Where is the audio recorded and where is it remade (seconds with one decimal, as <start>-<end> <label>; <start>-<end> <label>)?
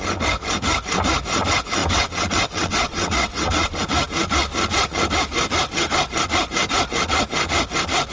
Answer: 0.0-1.8 recorded; 1.8-3.8 remade; 3.8-8.1 recorded